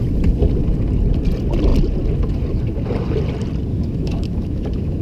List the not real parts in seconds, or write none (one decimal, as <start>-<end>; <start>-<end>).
3.7-5.0